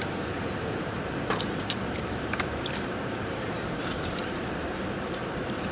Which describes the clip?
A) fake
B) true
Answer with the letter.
A